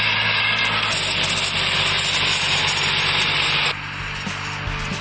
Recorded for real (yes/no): yes